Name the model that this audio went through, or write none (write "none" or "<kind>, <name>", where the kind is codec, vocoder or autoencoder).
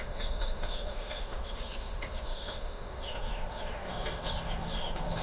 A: autoencoder, DAC-VAE